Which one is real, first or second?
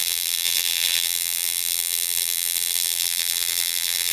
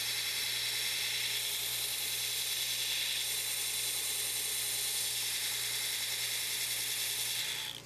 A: second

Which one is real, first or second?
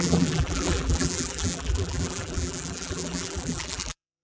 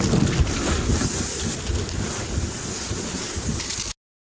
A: second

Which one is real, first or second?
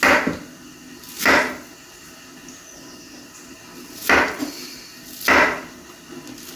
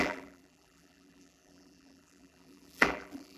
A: first